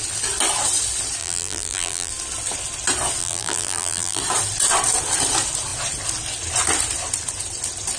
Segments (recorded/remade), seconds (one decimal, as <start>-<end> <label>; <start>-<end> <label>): 0.0-1.2 recorded; 1.2-2.1 remade; 2.1-3.2 recorded; 3.2-4.2 remade; 4.2-8.0 recorded